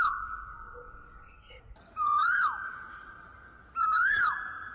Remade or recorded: recorded